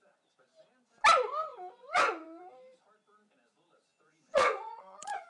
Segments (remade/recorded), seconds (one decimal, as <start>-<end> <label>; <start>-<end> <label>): 0.0-1.5 recorded; 1.5-2.4 remade; 2.4-3.9 recorded; 3.9-5.3 remade